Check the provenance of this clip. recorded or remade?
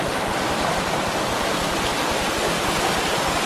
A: recorded